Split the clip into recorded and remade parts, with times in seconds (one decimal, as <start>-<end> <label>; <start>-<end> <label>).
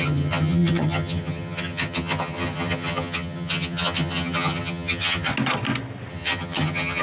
0.0-5.3 remade; 5.3-6.1 recorded; 6.1-7.0 remade